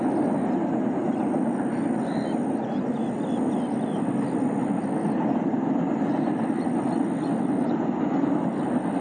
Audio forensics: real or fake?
real